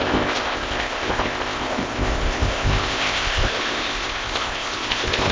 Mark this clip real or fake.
fake